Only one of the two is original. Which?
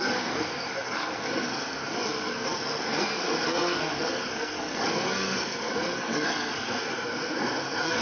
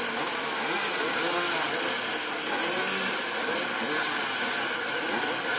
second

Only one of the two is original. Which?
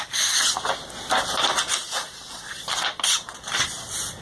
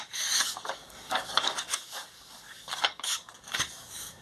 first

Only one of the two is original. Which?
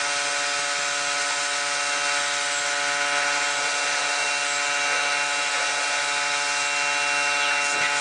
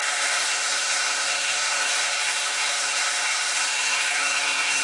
first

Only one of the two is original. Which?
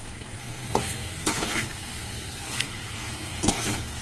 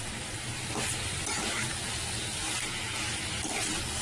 second